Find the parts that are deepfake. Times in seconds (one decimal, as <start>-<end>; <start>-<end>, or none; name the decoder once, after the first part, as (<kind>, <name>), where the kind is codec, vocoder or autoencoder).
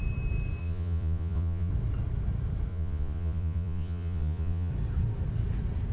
0.6-1.7 (vocoder, Vocos); 2.7-4.7